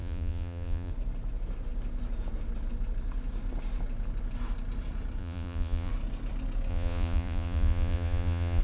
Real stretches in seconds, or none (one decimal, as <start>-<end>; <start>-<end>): 0.9-5.2; 5.9-6.7